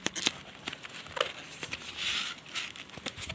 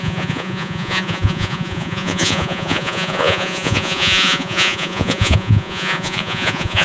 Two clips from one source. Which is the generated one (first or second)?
second